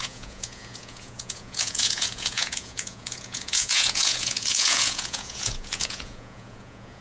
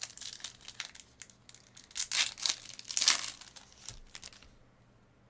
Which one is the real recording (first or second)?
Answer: second